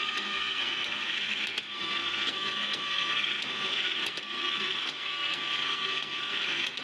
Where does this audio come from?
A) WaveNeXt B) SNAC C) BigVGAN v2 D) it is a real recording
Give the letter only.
B